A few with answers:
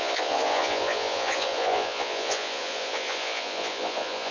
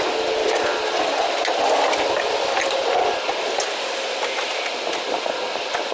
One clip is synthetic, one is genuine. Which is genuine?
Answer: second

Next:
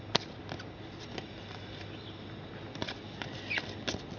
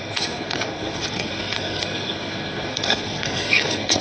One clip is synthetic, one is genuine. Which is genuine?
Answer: first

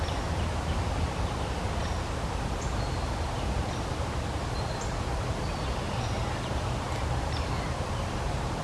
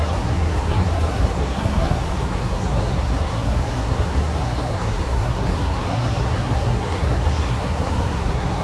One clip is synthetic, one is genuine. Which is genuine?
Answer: first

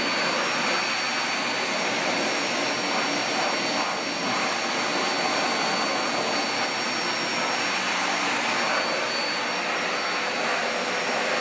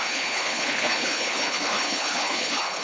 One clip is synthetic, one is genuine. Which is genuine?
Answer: first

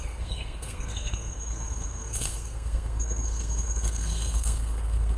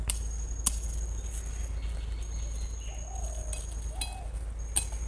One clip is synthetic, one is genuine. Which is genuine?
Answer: second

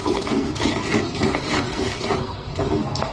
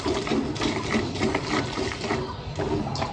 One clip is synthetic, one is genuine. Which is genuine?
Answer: second